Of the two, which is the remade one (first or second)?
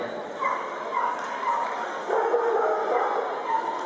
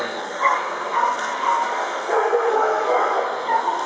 second